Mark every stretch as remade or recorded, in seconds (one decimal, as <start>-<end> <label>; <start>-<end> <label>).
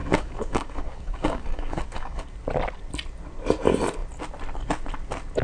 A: 0.0-2.2 remade; 2.2-5.4 recorded